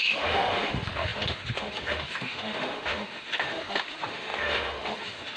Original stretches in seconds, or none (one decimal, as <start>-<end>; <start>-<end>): none